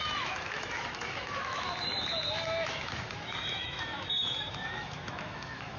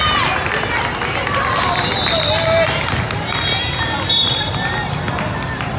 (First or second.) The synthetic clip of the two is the first